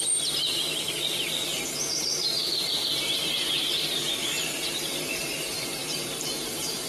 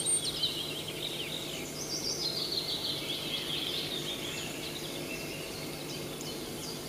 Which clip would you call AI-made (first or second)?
first